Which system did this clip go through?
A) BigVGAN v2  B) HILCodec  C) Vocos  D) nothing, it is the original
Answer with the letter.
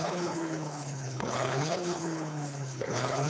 B